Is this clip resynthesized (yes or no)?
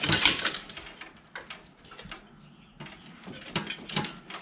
no